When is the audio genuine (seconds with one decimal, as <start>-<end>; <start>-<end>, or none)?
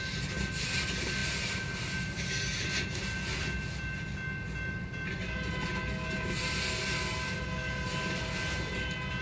0.0-9.2